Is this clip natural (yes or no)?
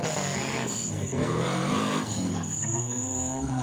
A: no